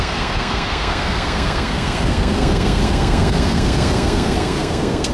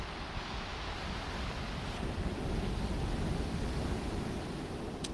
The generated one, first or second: first